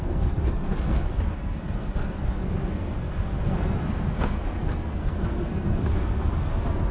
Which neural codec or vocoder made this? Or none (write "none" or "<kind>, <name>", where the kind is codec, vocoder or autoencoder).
codec, SNAC